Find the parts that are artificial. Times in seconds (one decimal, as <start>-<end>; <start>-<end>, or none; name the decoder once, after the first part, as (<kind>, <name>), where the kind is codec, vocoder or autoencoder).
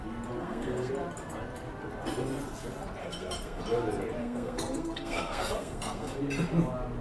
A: 0.4-0.9 (codec, SNAC); 3.0-3.6; 4.2-6.2